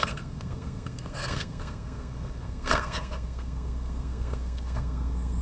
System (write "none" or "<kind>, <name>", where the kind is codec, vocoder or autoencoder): codec, SNAC